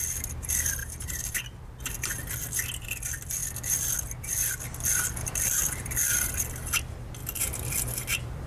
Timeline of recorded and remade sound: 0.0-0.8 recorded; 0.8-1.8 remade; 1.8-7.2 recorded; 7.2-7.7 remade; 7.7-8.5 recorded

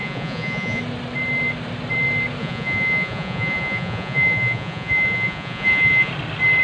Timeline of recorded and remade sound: 0.0-0.8 remade; 0.8-2.4 recorded; 2.4-6.1 remade; 6.1-6.6 recorded

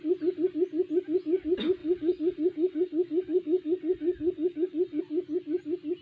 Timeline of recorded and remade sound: 0.0-1.8 recorded; 1.8-5.0 remade; 5.0-6.0 recorded

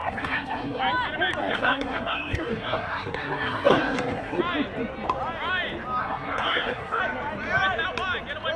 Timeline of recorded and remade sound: 0.0-0.8 remade; 0.8-1.4 recorded; 1.4-4.4 remade; 4.4-6.0 recorded; 6.0-7.0 remade; 7.0-8.6 recorded

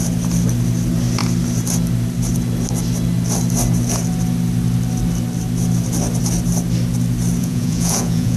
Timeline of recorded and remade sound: 0.0-7.4 recorded; 7.4-8.4 remade

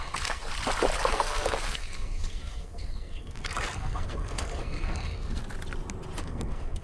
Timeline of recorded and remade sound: 0.0-0.5 remade; 0.5-1.1 recorded; 1.1-5.4 remade; 5.4-6.2 recorded; 6.2-6.8 remade